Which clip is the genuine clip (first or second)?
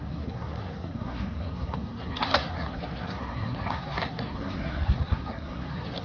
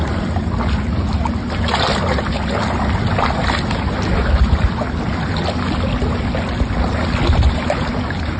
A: second